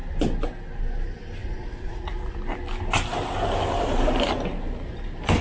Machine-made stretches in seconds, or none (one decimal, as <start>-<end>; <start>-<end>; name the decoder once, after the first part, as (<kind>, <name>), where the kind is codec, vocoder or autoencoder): 1.4-2.4 (vocoder, Vocos)